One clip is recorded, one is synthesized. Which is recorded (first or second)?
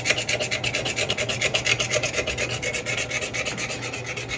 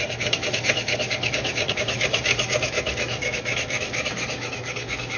first